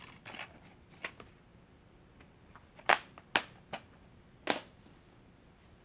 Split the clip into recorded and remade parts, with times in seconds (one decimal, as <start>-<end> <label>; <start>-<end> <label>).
0.0-5.8 recorded